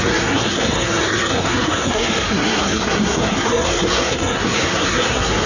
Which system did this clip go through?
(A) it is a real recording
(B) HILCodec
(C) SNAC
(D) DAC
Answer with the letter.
C